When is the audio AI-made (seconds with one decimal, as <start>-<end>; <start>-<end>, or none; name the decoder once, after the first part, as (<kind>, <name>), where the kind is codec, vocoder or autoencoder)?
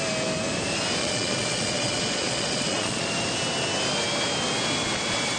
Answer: 1.0-3.1 (vocoder, Vocos)